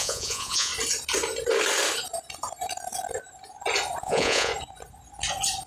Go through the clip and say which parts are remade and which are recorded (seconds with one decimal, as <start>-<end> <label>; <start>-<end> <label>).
0.0-0.7 remade; 0.7-4.0 recorded; 4.0-4.5 remade; 4.5-5.7 recorded